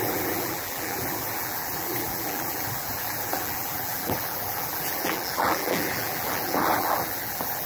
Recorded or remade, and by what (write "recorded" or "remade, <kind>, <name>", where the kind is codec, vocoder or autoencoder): remade, vocoder, BigVGAN v2